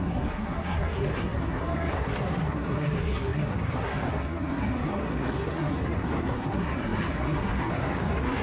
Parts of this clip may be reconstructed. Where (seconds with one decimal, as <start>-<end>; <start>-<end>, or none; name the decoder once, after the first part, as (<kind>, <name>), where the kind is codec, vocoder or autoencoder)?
0.0-8.4 (codec, SNAC)